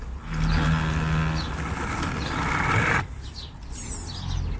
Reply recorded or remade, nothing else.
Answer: recorded